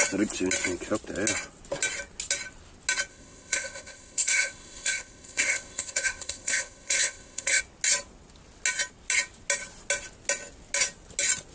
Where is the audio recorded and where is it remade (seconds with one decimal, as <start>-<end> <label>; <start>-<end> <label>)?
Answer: 0.0-3.1 recorded; 3.1-7.6 remade; 7.6-11.5 recorded

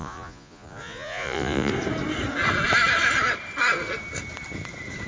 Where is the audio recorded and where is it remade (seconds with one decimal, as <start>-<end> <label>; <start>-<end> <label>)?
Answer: 0.0-1.7 remade; 1.7-5.1 recorded